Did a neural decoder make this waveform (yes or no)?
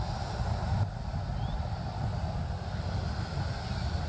no